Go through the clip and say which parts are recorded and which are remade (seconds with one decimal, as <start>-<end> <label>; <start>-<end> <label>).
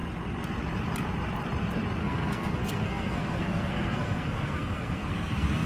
0.0-2.0 recorded; 2.0-5.7 remade